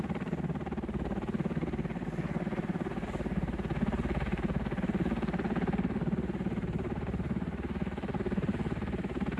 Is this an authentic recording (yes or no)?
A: yes